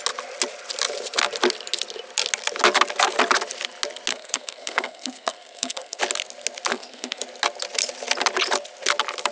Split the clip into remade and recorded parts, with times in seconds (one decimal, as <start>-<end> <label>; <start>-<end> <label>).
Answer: 0.0-4.1 recorded; 4.1-6.0 remade; 6.0-6.7 recorded; 6.7-7.2 remade; 7.2-9.3 recorded